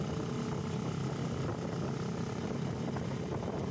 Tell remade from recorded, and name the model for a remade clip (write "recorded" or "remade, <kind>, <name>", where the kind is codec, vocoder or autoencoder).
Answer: recorded